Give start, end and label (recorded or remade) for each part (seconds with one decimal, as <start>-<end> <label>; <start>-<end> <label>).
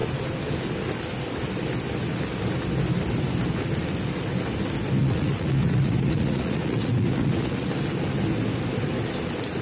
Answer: 0.0-5.0 recorded; 5.0-7.7 remade; 7.7-9.6 recorded